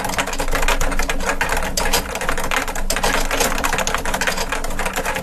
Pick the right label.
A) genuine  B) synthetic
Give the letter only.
A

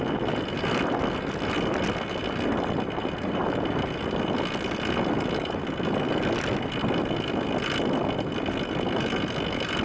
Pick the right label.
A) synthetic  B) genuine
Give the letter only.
B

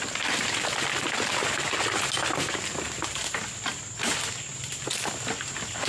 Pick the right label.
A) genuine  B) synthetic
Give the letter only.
A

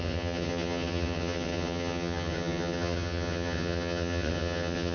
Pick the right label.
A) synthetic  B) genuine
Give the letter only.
A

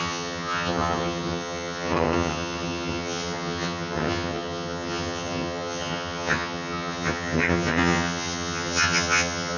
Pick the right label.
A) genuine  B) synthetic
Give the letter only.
B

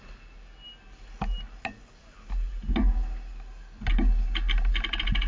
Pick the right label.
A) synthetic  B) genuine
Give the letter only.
B